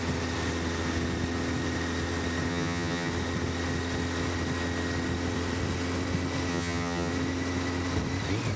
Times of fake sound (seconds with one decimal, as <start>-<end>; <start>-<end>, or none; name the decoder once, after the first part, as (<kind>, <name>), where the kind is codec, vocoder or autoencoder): 2.5-3.1 (vocoder, HiFi-GAN); 6.5-7.1